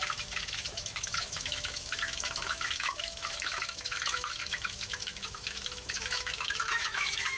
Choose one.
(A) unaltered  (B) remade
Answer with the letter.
B